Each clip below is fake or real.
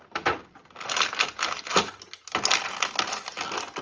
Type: real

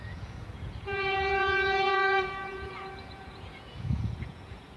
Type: fake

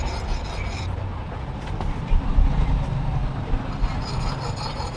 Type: real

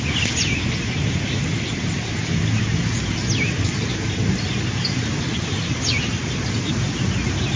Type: real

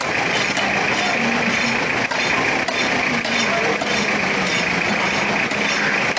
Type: real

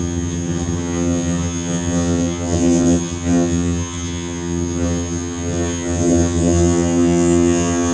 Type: fake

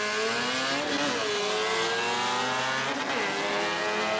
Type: real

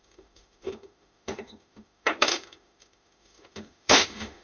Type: fake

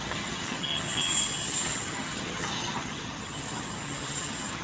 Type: fake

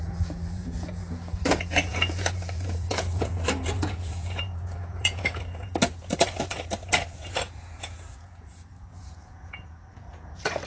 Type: fake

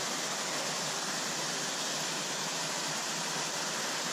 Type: real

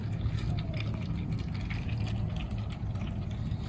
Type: fake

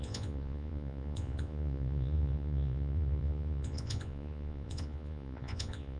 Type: fake